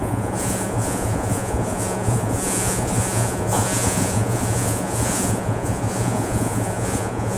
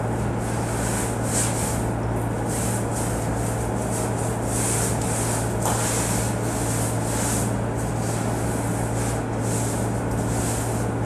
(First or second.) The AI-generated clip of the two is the first